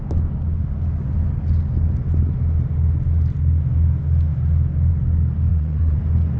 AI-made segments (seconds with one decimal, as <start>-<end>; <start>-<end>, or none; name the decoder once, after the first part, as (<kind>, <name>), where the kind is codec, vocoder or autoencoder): 5.5-6.0 (vocoder, Vocos)